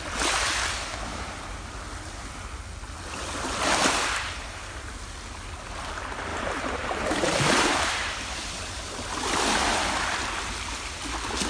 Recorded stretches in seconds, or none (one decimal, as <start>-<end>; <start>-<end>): 0.0-1.1; 1.7-6.3; 8.8-11.5